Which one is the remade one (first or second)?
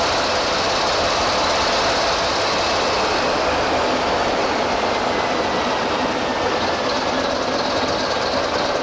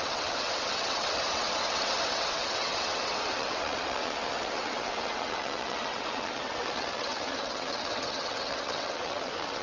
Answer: second